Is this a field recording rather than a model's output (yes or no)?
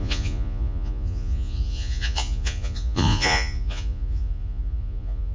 no